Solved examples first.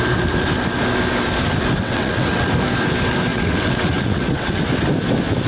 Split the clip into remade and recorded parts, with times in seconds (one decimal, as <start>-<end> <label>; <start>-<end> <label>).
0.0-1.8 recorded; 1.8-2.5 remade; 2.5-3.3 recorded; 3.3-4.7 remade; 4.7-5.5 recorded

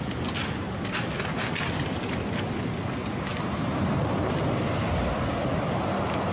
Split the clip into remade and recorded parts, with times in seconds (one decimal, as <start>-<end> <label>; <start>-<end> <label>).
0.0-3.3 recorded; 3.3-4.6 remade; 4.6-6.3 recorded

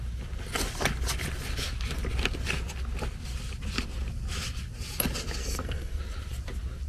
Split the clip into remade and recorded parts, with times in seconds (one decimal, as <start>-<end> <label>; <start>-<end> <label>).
0.0-5.4 recorded; 5.4-6.0 remade; 6.0-6.9 recorded

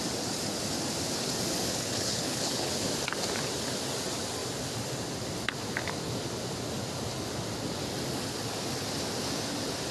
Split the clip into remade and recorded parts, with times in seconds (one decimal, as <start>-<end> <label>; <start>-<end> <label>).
0.0-1.7 recorded; 1.7-2.7 remade; 2.7-9.9 recorded

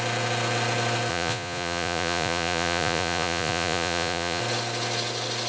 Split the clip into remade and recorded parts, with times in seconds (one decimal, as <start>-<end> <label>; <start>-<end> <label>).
0.0-1.1 recorded; 1.1-4.4 remade; 4.4-5.5 recorded

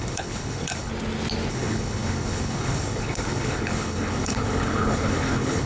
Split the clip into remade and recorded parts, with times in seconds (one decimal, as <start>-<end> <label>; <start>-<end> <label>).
0.0-0.9 remade; 0.9-1.5 recorded; 1.5-5.7 remade

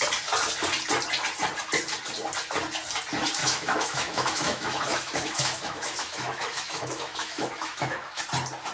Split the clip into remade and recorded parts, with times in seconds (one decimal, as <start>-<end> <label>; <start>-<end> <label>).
0.0-3.4 recorded; 3.4-8.2 remade; 8.2-8.7 recorded